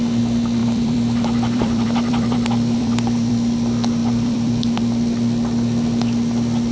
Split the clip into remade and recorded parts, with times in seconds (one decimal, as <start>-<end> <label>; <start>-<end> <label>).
0.0-0.6 recorded; 0.6-3.3 remade; 3.3-4.0 recorded; 4.0-4.8 remade; 4.8-6.7 recorded

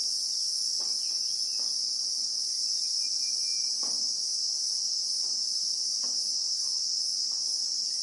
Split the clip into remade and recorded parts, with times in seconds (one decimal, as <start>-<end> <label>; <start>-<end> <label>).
0.0-2.2 recorded; 2.2-3.0 remade; 3.0-3.5 recorded; 3.5-4.2 remade; 4.2-8.0 recorded

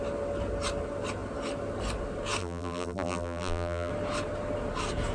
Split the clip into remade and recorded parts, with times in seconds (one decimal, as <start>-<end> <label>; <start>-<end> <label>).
0.0-2.4 recorded; 2.4-3.9 remade; 3.9-5.1 recorded

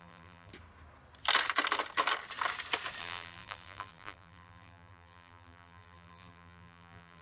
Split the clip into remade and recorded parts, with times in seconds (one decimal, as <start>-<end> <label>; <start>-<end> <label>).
0.0-0.5 remade; 0.5-3.0 recorded; 3.0-7.2 remade